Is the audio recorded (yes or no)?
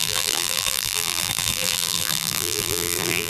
no